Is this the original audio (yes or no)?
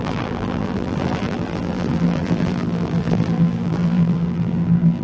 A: no